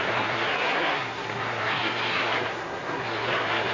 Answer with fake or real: fake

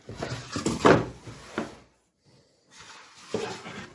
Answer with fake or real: real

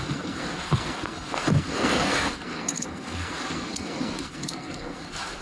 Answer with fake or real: fake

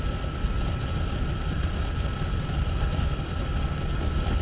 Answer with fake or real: real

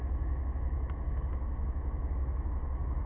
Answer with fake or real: fake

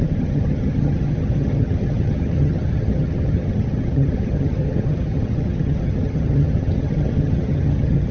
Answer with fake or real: fake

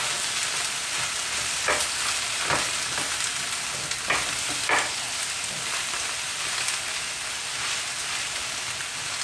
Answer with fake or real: real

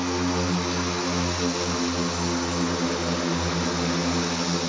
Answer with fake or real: real